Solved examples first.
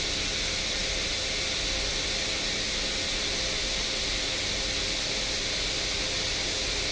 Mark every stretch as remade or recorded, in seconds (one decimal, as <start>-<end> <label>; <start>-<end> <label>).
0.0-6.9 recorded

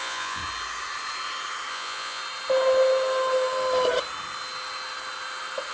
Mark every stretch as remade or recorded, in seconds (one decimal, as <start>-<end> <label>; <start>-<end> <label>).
0.0-0.4 remade; 0.4-1.7 recorded; 1.7-2.2 remade; 2.2-5.7 recorded

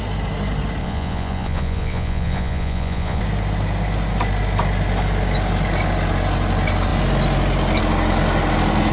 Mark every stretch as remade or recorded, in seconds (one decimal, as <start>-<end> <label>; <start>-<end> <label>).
0.0-0.8 recorded; 0.8-3.2 remade; 3.2-8.9 recorded

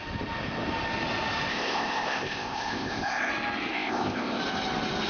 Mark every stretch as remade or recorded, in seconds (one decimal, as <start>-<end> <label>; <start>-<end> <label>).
0.0-1.5 recorded; 1.5-3.3 remade; 3.3-3.7 recorded; 3.7-4.4 remade; 4.4-5.1 recorded

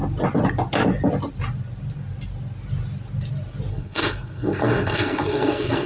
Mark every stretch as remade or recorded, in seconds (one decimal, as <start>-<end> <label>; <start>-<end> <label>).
0.0-3.7 recorded; 3.7-5.9 remade

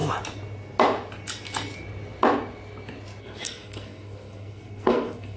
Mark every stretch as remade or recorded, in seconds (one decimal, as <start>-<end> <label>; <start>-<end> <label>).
0.0-3.2 recorded; 3.2-5.4 remade

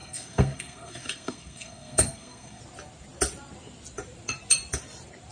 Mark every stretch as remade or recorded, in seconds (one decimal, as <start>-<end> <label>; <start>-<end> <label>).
0.0-2.6 remade; 2.6-5.3 recorded